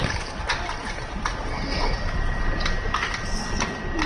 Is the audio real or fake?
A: real